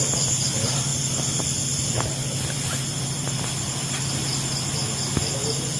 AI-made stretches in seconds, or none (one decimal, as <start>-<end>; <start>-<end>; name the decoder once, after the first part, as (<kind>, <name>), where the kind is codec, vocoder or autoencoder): 0.9-3.4 (vocoder, BigVGAN v2)